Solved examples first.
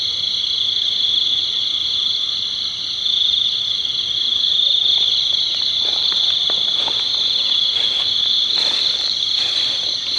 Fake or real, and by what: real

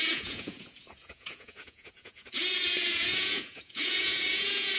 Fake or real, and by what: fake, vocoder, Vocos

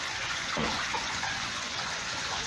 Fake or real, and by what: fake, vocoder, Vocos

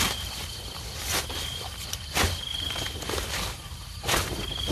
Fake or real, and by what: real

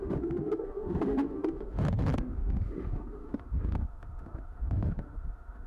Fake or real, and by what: fake, autoencoder, DAC-VAE